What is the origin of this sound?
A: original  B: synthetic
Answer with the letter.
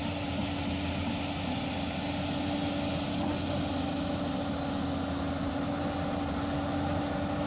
A